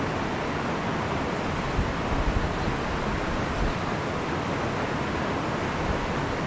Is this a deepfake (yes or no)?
no